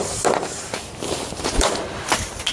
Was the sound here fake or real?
fake